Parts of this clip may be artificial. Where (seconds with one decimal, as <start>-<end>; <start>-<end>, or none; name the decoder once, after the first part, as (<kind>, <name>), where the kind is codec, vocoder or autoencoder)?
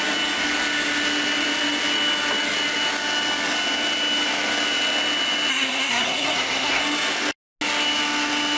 5.5-6.8 (codec, SNAC)